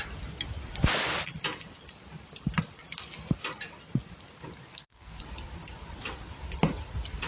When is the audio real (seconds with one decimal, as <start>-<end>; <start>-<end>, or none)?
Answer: 0.0-4.7; 5.2-7.3